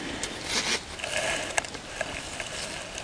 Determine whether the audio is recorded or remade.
recorded